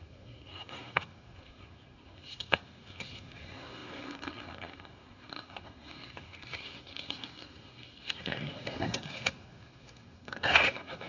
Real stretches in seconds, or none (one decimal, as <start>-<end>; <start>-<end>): none

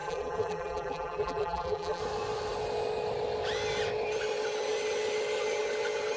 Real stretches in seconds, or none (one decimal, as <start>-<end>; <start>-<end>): 2.0-6.2

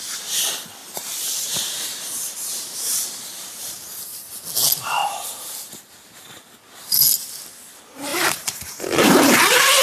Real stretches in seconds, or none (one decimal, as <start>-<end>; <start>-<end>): 0.0-0.8; 3.8-5.0; 5.7-8.1; 9.4-9.8

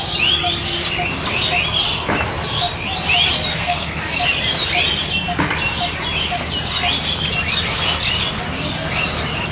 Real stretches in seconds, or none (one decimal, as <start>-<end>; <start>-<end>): 0.0-3.5; 4.0-9.5

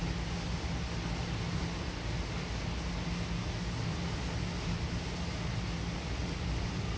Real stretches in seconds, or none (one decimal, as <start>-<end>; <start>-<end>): 0.0-6.2

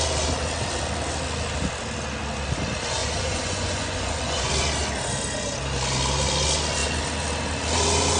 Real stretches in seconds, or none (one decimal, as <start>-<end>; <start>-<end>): 0.0-3.0; 4.5-8.2